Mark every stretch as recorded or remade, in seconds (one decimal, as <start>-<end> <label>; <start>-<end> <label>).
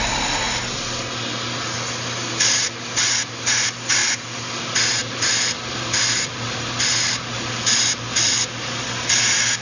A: 0.0-1.1 remade; 1.1-4.0 recorded; 4.0-4.6 remade; 4.6-5.0 recorded; 5.0-6.3 remade; 6.3-9.6 recorded